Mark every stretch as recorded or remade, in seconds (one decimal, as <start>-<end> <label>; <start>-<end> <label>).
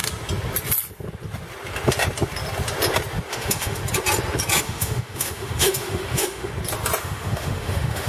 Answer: 0.0-3.3 recorded; 3.3-3.8 remade; 3.8-4.6 recorded; 4.6-6.5 remade; 6.5-7.0 recorded; 7.0-8.1 remade